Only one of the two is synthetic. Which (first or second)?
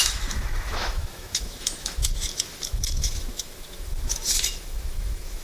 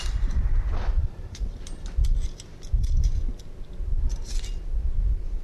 first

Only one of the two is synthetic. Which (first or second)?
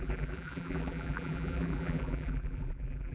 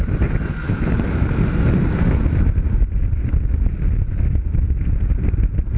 first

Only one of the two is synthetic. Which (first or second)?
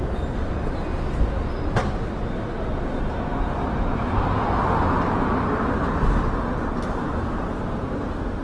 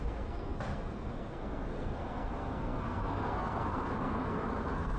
second